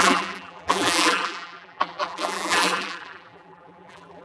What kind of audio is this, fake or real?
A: fake